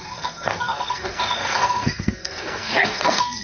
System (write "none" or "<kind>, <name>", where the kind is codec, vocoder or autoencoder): codec, SNAC